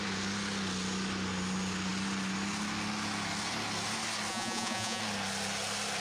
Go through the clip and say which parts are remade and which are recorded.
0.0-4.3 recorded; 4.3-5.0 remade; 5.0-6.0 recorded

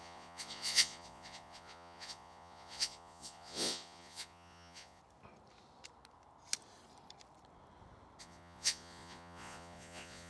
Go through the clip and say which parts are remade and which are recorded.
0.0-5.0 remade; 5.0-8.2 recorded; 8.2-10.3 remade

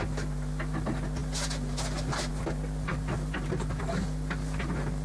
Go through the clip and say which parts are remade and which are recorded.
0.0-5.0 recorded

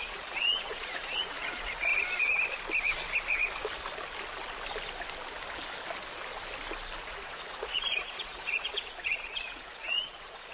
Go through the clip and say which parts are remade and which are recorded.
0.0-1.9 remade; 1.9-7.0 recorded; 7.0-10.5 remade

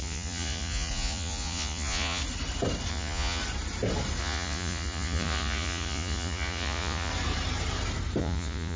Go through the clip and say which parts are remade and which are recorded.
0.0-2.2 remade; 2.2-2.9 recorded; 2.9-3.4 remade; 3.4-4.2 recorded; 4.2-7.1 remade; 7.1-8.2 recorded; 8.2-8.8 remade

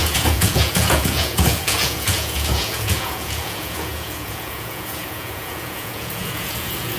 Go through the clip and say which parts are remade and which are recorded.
0.0-7.0 remade